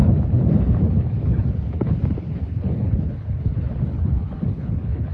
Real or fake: fake